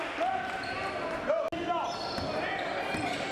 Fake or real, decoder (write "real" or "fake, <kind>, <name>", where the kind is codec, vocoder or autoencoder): real